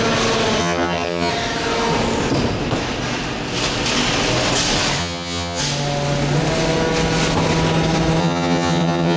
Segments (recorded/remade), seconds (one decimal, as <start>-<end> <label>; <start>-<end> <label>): 0.0-0.6 recorded; 0.6-1.3 remade; 1.3-5.0 recorded; 5.0-5.6 remade; 5.6-8.2 recorded; 8.2-9.2 remade